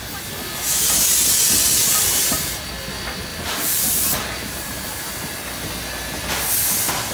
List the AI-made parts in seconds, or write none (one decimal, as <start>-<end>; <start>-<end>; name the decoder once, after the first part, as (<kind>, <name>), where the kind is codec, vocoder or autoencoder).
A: 1.8-2.7 (vocoder, BigVGAN v2); 3.3-5.1